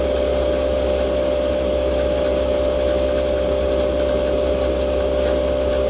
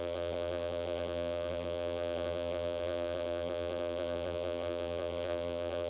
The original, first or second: first